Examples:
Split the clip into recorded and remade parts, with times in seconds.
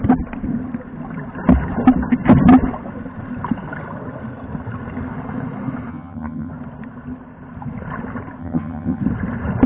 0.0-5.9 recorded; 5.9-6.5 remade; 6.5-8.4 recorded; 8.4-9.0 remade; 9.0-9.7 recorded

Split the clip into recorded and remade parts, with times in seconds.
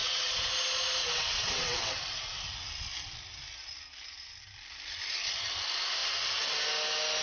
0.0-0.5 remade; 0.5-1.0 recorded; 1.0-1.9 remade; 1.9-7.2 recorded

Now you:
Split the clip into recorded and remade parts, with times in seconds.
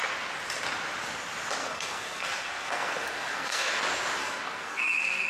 0.0-1.6 recorded; 1.6-3.8 remade; 3.8-4.2 recorded; 4.2-5.3 remade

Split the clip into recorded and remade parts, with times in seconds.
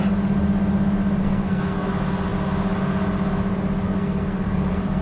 0.0-1.2 recorded; 1.2-1.9 remade; 1.9-3.8 recorded; 3.8-5.0 remade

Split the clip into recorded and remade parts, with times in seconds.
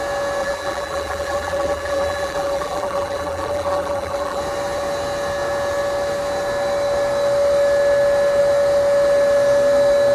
0.0-0.4 recorded; 0.4-4.4 remade; 4.4-10.1 recorded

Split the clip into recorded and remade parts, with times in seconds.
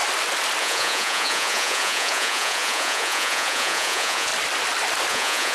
0.0-0.6 recorded; 0.6-4.3 remade; 4.3-5.1 recorded; 5.1-5.5 remade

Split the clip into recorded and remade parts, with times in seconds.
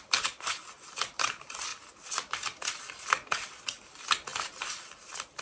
0.0-5.4 recorded